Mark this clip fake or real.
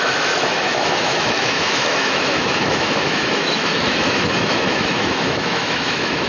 fake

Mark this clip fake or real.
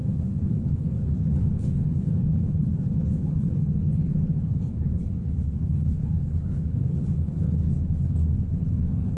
fake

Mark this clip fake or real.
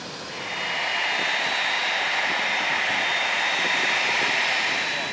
real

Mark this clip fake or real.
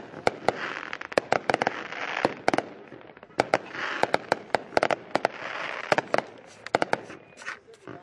real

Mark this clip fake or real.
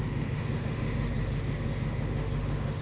fake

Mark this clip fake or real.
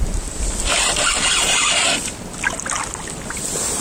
real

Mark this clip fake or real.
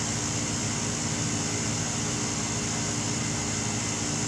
real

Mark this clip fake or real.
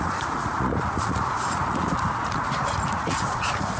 fake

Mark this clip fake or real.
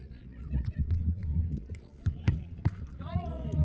fake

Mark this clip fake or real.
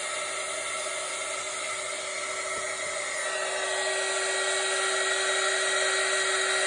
real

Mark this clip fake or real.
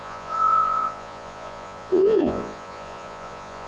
fake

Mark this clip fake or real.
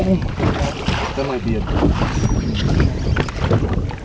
real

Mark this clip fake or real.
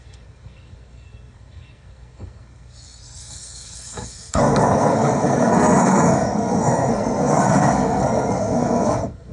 fake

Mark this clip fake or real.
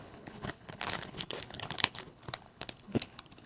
fake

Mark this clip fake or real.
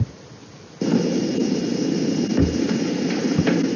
real